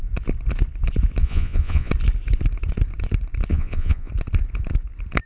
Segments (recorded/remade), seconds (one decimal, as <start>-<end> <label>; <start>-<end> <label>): 0.0-1.2 recorded; 1.2-1.9 remade; 1.9-3.5 recorded; 3.5-4.1 remade; 4.1-5.3 recorded